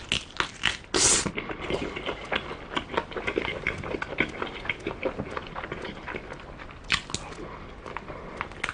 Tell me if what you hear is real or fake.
real